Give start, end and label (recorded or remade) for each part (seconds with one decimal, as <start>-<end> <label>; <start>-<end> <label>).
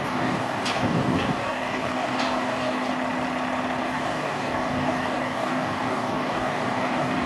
0.0-2.9 remade; 2.9-3.8 recorded; 3.8-7.3 remade